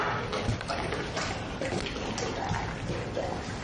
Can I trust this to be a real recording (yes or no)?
no